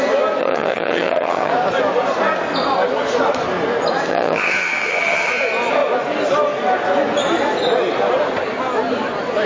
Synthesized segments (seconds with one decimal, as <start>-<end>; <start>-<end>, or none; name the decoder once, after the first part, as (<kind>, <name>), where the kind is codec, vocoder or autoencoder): 0.4-1.5 (vocoder, HiFi-GAN); 4.1-5.3